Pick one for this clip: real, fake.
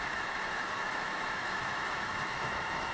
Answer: fake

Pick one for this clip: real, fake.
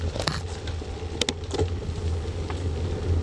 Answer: real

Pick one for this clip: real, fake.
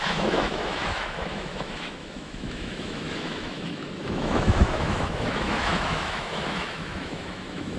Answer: fake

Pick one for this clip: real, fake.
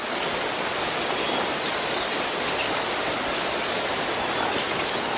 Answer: real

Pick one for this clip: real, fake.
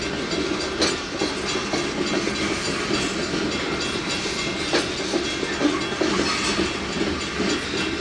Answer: real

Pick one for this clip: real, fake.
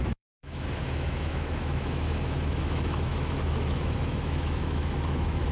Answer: fake